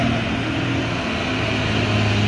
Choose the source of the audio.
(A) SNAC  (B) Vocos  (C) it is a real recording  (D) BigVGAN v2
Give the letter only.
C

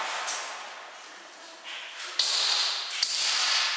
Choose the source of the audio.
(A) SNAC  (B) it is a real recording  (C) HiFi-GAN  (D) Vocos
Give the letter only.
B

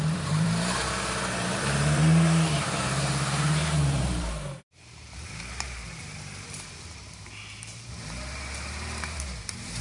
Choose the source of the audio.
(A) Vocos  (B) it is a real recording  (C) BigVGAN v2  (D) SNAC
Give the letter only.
C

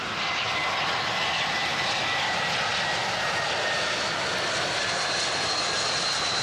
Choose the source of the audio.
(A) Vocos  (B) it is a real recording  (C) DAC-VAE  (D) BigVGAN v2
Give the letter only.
B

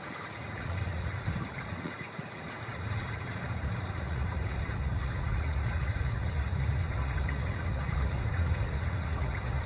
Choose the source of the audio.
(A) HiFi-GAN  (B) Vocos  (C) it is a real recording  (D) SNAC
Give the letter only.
B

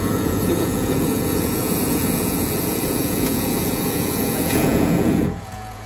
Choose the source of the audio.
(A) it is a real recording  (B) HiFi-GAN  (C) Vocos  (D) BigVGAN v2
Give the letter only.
C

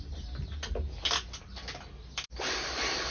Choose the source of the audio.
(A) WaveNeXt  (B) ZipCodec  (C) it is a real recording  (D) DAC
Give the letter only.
C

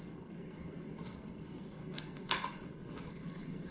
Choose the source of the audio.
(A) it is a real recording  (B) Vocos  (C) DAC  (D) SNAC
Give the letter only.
D